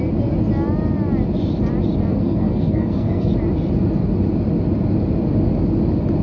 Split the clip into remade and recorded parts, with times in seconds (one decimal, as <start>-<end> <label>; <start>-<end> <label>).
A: 0.0-2.1 recorded; 2.1-3.3 remade; 3.3-6.2 recorded